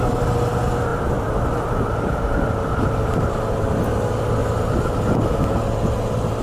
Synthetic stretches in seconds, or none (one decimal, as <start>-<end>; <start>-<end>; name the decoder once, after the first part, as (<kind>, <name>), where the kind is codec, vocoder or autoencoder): 0.9-2.9 (vocoder, BigVGAN v2); 4.4-5.2